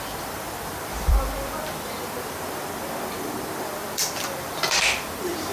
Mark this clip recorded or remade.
remade